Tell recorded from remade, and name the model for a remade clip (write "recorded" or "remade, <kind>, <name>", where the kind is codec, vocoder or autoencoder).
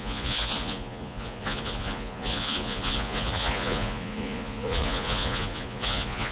remade, vocoder, Vocos